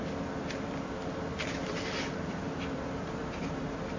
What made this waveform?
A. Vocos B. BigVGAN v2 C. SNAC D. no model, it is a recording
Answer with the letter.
B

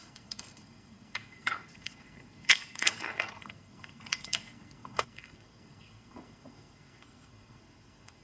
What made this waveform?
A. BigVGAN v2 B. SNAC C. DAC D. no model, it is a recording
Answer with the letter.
B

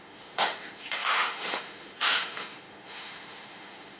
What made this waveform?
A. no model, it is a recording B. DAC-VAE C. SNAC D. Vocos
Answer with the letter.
B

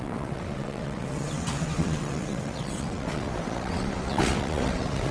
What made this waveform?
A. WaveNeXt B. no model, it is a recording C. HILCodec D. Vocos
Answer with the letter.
A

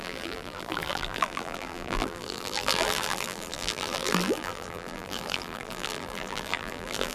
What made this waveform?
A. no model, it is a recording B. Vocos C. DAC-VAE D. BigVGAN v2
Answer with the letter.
D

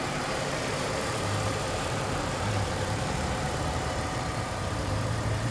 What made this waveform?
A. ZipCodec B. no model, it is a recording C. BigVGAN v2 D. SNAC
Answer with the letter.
C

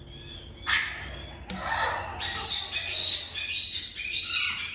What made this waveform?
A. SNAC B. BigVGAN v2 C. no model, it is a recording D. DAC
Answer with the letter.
C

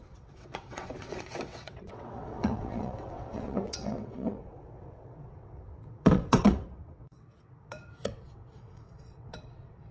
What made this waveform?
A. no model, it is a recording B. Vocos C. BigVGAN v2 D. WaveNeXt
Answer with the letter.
D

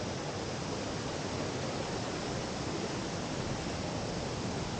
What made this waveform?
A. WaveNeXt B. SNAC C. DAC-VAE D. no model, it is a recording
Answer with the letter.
D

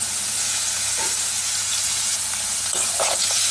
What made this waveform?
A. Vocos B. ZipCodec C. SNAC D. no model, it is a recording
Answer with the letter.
A